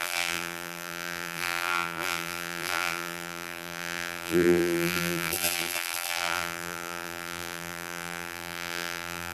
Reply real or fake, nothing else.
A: fake